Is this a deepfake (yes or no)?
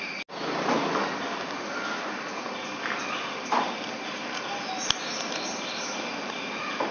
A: no